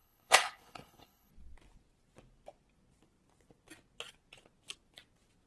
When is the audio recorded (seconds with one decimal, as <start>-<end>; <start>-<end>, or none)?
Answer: 1.3-5.5

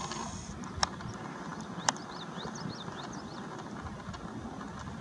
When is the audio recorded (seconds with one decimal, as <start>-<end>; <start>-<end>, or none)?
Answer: 0.0-5.0

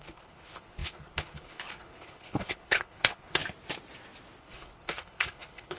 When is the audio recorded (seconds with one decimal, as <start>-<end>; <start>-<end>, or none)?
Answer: 3.4-4.4

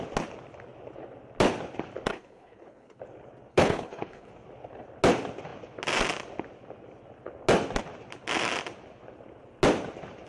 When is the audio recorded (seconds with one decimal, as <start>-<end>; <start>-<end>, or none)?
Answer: 0.0-2.1; 3.0-3.5; 4.3-10.3

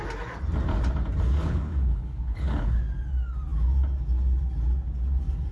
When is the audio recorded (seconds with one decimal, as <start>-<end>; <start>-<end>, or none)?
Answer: 0.0-1.4; 2.8-5.5

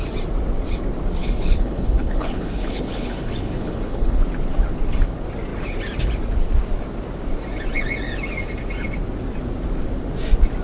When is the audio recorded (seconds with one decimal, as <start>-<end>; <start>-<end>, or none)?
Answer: 0.0-1.2; 4.2-10.6

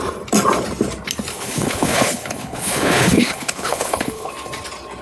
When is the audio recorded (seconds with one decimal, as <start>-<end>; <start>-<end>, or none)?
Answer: 0.0-1.3; 4.3-5.0

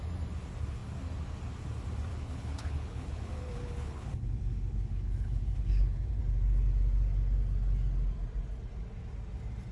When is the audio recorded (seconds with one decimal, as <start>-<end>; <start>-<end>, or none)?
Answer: 0.0-2.1; 6.2-9.7